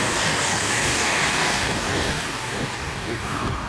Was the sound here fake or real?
fake